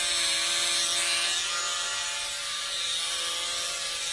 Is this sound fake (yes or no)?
no